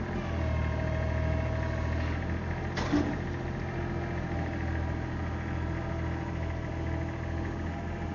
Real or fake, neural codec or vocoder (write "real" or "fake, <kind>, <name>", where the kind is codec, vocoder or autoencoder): real